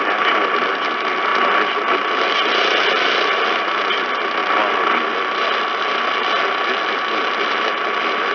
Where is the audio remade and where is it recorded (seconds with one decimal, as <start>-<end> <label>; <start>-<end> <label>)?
0.0-8.3 recorded